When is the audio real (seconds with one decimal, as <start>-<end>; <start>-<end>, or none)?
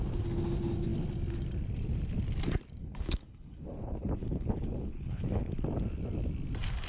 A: 0.0-2.8; 5.5-6.9